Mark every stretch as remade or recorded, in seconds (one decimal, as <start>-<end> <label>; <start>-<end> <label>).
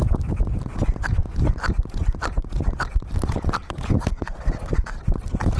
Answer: 0.0-5.6 recorded